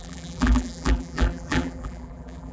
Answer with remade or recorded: remade